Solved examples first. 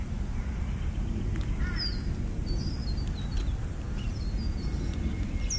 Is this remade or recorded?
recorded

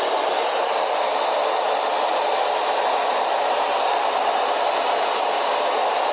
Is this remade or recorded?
recorded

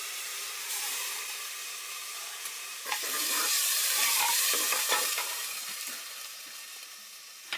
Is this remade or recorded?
remade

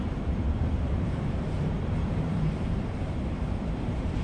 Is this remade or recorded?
remade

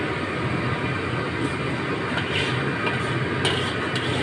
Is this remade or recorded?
recorded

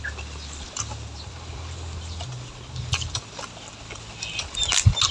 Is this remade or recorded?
recorded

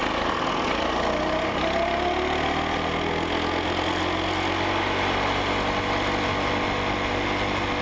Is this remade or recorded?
recorded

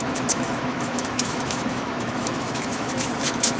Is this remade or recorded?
remade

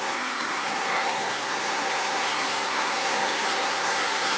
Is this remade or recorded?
remade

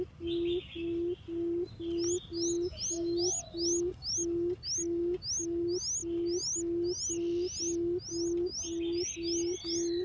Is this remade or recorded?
recorded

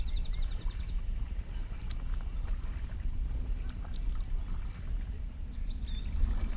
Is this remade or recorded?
recorded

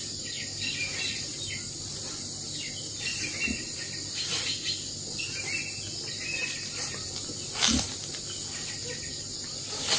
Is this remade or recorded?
recorded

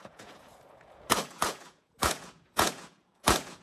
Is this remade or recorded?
remade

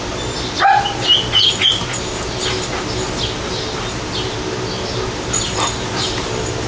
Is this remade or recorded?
recorded